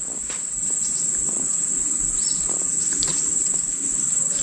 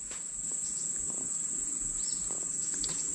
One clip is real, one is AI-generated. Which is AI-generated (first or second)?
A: second